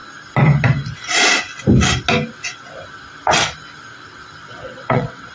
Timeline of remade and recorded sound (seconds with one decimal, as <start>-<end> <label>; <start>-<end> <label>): 0.0-4.4 recorded; 4.4-5.3 remade